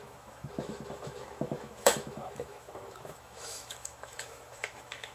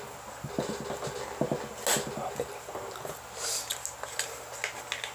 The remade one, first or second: first